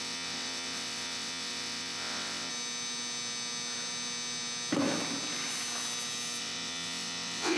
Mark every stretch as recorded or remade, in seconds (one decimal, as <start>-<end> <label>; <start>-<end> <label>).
0.0-2.5 remade; 2.5-6.4 recorded; 6.4-7.6 remade